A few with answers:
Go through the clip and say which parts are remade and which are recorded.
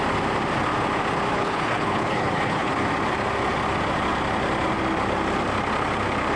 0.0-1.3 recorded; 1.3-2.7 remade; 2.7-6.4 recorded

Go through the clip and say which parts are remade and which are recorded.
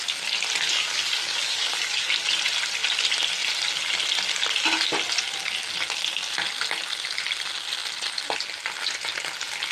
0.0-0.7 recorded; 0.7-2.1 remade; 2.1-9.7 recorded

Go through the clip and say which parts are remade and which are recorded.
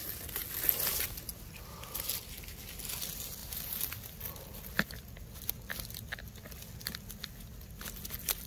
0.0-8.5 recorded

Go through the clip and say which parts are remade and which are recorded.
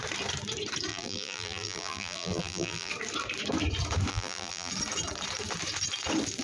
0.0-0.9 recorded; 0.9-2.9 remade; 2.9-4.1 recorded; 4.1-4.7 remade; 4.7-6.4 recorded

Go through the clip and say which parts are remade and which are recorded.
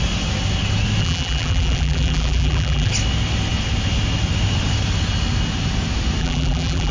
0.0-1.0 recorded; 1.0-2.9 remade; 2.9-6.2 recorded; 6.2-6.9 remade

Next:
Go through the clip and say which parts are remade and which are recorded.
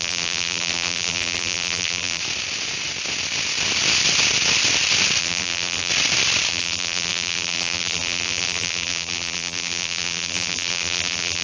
0.0-2.2 remade; 2.2-5.2 recorded; 5.2-5.9 remade; 5.9-6.5 recorded; 6.5-11.4 remade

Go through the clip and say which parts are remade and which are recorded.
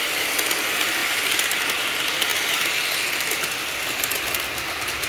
0.0-5.1 recorded